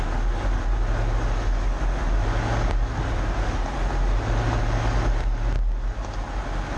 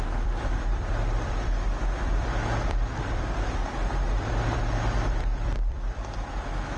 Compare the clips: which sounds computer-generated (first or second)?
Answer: second